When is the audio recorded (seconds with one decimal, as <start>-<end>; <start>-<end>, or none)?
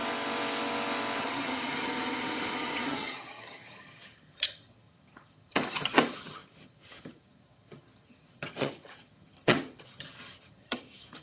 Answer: 0.0-1.2